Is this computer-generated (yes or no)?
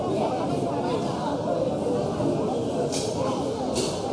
no